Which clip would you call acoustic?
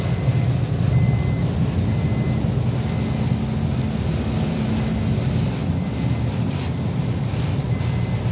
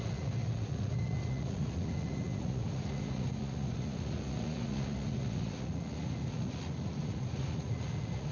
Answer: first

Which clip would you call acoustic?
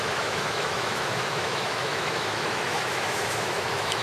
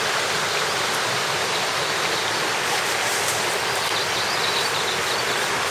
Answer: second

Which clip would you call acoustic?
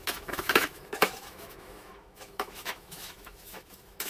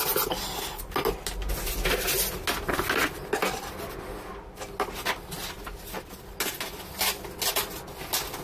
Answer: second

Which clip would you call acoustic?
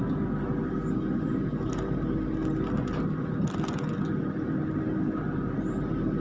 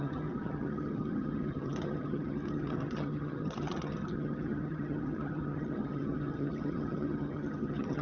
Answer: first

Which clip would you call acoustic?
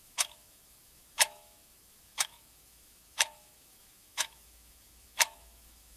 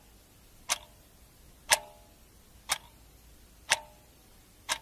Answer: second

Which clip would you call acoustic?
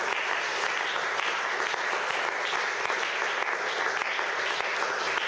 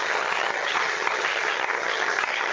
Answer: first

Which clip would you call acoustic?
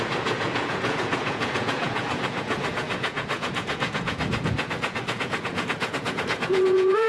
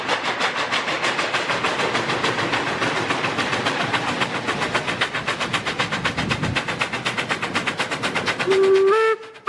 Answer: second